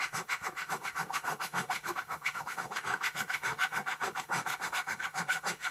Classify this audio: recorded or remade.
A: remade